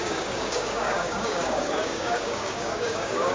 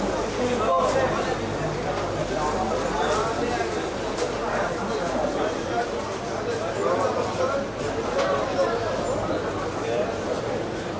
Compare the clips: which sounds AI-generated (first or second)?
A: first